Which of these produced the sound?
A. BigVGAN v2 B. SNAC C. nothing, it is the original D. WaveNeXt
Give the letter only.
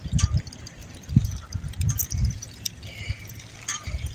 A